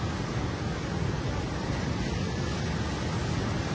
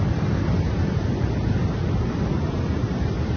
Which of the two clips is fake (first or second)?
second